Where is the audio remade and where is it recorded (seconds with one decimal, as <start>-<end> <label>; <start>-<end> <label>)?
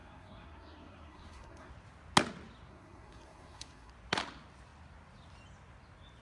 0.0-1.7 remade; 1.7-2.7 recorded; 2.7-3.9 remade; 3.9-6.2 recorded